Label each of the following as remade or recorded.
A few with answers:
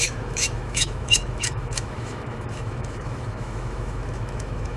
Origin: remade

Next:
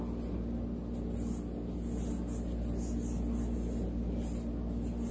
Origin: recorded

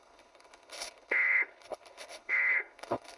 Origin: remade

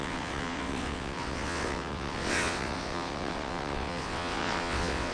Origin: remade